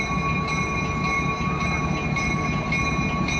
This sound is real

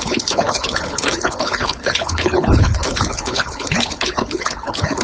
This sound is fake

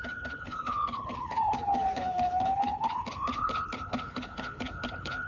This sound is fake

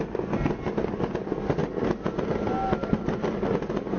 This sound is real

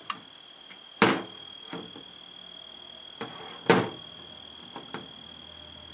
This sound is real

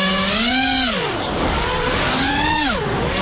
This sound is fake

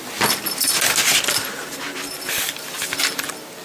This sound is real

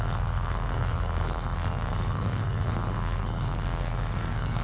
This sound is fake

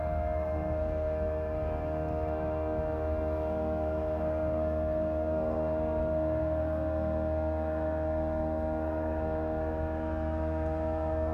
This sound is fake